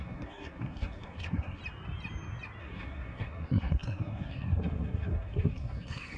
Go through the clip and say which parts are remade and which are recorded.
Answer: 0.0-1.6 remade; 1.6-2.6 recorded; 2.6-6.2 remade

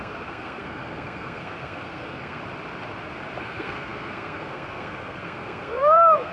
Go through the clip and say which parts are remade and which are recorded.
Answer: 0.0-2.4 remade; 2.4-3.4 recorded; 3.4-6.3 remade

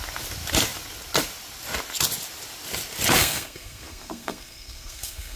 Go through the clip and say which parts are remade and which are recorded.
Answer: 0.0-3.2 recorded; 3.2-5.4 remade

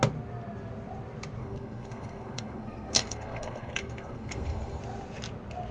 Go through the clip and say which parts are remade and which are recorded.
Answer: 0.0-1.4 recorded; 1.4-4.8 remade; 4.8-5.7 recorded

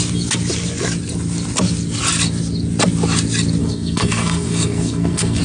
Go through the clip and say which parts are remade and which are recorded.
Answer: 0.0-3.6 recorded; 3.6-5.4 remade